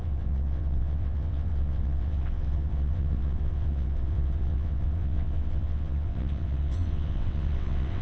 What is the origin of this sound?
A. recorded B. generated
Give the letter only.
B